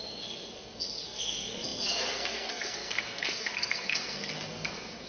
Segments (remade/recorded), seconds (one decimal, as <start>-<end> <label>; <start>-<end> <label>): 0.0-5.1 remade